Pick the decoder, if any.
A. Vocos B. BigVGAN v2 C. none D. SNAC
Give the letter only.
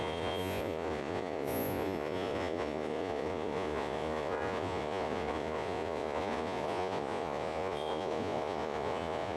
A